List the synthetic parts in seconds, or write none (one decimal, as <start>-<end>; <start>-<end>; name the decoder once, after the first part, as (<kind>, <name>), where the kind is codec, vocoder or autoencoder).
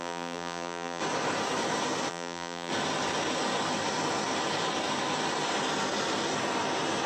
0.0-1.0 (vocoder, BigVGAN v2); 2.1-2.7